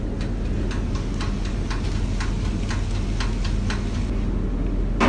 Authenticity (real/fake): real